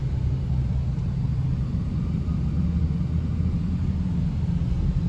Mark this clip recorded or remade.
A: recorded